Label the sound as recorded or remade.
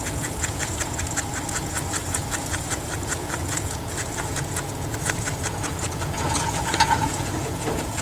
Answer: remade